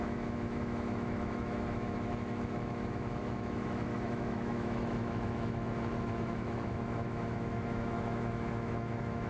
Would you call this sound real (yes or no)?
no